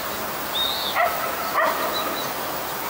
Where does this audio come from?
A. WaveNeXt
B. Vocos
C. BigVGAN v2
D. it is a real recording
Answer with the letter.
D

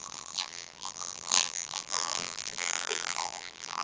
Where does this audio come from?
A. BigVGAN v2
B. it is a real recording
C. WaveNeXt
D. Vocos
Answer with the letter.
A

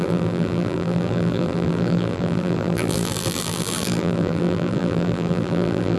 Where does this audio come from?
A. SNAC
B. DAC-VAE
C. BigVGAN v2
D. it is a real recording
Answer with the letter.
C